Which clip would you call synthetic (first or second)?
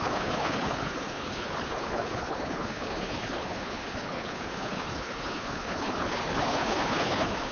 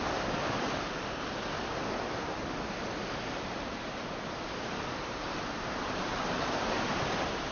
first